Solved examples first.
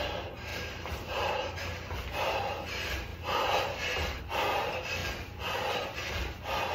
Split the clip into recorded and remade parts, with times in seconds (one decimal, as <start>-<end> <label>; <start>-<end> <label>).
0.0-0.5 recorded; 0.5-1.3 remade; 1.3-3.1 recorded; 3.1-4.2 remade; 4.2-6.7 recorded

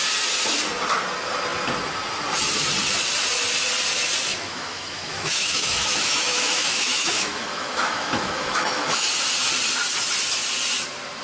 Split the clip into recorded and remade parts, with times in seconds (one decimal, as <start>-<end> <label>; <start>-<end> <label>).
0.0-4.3 recorded; 4.3-9.1 remade; 9.1-11.2 recorded

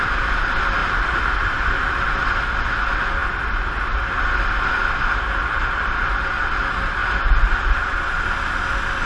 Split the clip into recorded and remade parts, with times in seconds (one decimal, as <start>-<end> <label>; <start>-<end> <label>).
0.0-9.1 recorded

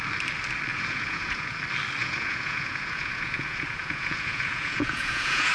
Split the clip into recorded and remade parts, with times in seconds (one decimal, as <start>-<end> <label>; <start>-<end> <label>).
0.0-0.7 recorded; 0.7-1.6 remade; 1.6-2.0 recorded; 2.0-5.5 remade

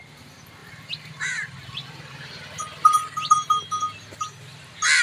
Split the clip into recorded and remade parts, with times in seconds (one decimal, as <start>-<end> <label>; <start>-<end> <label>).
0.0-0.6 recorded; 0.6-3.6 remade; 3.6-5.0 recorded

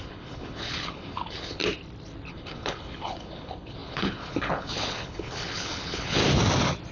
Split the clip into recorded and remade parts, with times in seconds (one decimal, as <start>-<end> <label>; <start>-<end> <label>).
0.0-1.6 remade; 1.6-2.3 recorded; 2.3-6.2 remade; 6.2-6.9 recorded

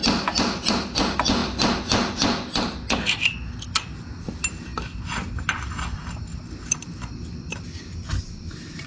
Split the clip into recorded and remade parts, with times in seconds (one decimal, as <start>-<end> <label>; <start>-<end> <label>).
0.0-8.9 recorded

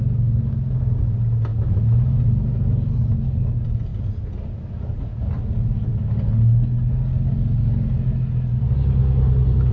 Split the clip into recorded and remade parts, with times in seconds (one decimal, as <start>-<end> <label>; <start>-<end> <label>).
0.0-1.5 recorded; 1.5-2.2 remade; 2.2-9.7 recorded